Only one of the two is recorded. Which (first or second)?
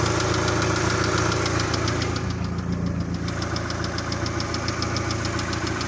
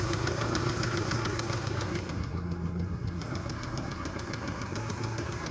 first